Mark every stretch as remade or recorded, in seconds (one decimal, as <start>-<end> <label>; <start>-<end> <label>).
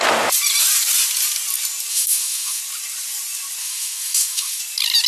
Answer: 0.0-1.9 recorded; 1.9-2.6 remade; 2.6-3.6 recorded; 3.6-4.6 remade; 4.6-5.1 recorded